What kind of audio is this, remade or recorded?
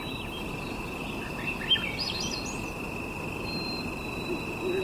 recorded